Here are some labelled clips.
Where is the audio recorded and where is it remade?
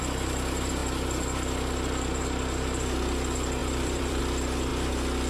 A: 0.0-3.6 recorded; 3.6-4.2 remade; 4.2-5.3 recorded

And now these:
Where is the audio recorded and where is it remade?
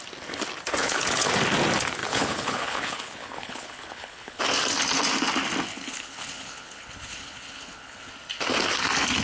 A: 0.0-0.8 recorded; 0.8-1.3 remade; 1.3-2.0 recorded; 2.0-4.4 remade; 4.4-5.7 recorded; 5.7-8.1 remade; 8.1-9.2 recorded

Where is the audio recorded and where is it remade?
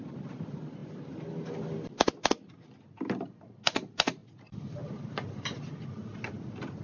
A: 0.0-6.8 recorded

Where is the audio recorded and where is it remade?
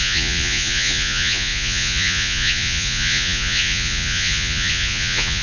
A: 0.0-5.4 remade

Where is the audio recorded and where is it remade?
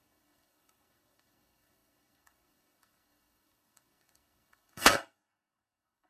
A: 0.0-6.1 remade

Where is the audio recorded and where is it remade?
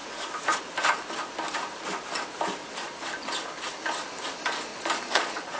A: 0.0-2.6 recorded; 2.6-3.1 remade; 3.1-4.7 recorded; 4.7-5.6 remade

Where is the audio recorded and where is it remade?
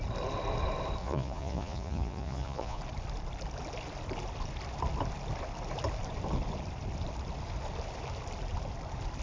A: 0.0-1.0 recorded; 1.0-2.8 remade; 2.8-9.2 recorded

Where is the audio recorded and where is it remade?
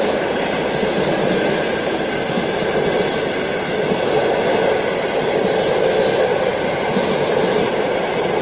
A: 0.0-8.4 recorded